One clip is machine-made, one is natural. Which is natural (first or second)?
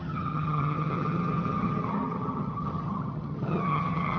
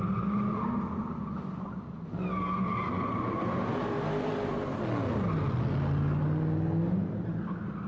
second